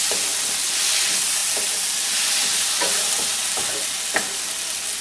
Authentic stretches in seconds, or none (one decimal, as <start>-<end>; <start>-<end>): 0.0-5.0